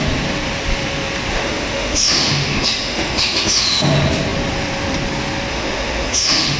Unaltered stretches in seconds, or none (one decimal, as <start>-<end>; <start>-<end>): 0.0-1.3; 3.9-5.5